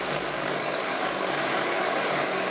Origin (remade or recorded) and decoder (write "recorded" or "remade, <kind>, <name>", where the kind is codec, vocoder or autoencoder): remade, codec, DAC